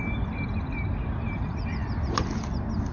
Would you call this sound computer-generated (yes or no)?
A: no